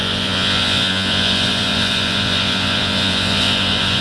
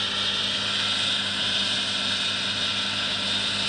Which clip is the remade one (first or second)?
first